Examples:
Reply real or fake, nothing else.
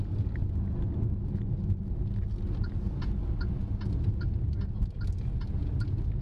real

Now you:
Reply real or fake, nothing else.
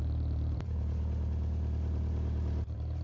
fake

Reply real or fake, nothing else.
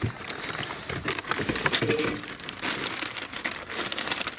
fake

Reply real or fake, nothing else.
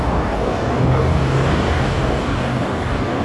fake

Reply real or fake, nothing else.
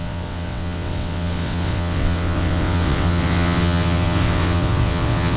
fake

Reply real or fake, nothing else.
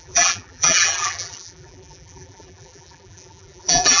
fake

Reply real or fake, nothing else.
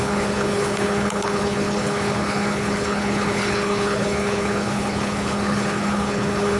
fake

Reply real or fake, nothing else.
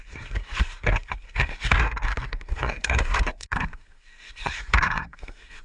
fake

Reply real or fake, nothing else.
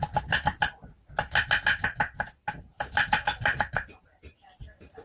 real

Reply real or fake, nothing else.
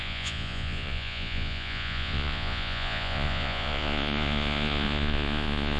fake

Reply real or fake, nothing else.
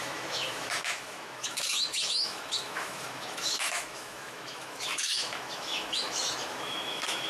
fake